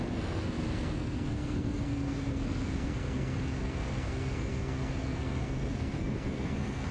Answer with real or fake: fake